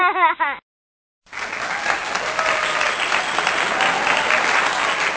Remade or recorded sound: recorded